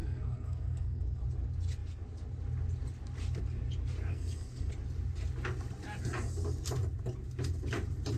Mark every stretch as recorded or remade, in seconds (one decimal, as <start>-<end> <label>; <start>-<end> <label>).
0.0-1.2 remade; 1.2-4.1 recorded; 4.1-4.7 remade; 4.7-8.2 recorded